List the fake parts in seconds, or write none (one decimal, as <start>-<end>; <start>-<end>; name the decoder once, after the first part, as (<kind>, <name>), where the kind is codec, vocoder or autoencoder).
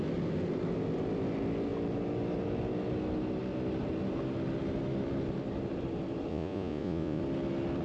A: 6.3-7.2 (vocoder, Vocos)